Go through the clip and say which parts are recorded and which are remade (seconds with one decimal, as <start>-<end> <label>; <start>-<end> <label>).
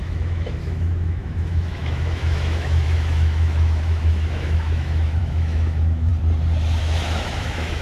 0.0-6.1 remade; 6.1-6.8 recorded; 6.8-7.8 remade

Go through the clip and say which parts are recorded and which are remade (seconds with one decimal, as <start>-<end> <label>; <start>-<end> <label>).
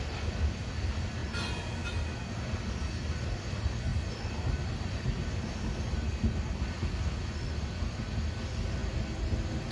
0.0-9.7 recorded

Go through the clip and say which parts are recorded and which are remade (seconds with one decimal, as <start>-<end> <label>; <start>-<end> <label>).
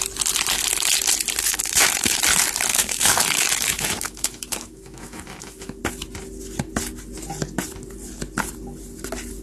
0.0-1.4 recorded; 1.4-2.2 remade; 2.2-2.7 recorded; 2.7-5.8 remade; 5.8-9.4 recorded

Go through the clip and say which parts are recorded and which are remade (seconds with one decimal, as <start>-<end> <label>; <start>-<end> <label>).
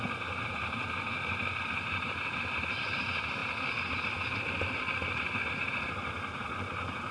0.0-3.4 remade; 3.4-5.5 recorded; 5.5-7.1 remade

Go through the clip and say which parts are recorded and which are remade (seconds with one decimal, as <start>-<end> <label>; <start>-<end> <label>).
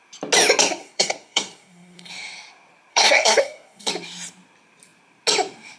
0.0-0.8 recorded; 0.8-2.1 remade; 2.1-2.9 recorded; 2.9-3.9 remade; 3.9-5.8 recorded